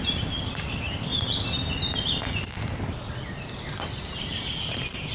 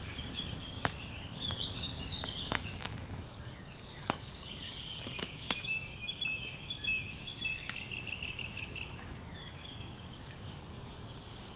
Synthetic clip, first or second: second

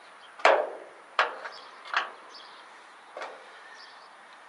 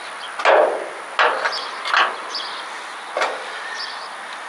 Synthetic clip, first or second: first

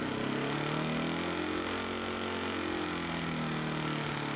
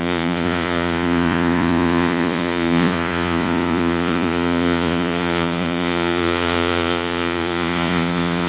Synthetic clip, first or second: second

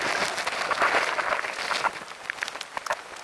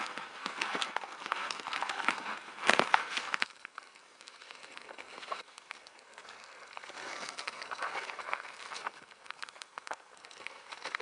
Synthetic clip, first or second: second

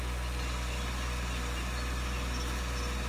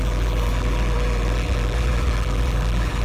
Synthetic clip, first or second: second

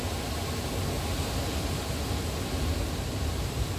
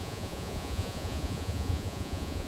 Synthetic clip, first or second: second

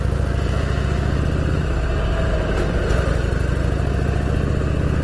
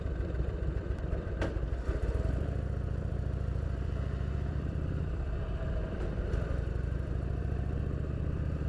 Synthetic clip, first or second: second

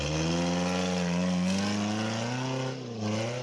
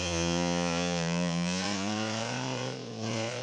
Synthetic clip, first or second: second